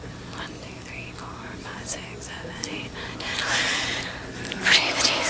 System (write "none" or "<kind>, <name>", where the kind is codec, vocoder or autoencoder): none